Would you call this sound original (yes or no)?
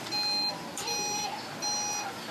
yes